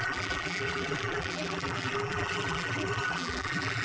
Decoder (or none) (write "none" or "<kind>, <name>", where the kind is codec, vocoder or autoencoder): vocoder, BigVGAN v2